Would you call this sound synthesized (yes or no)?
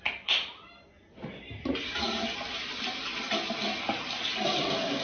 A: no